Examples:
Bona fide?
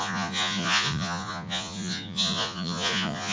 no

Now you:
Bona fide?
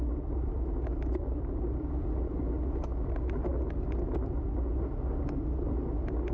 yes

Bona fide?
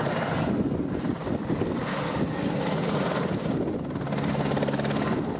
yes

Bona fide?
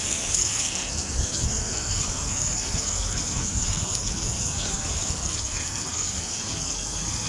no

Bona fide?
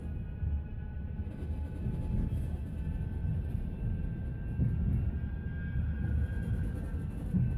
yes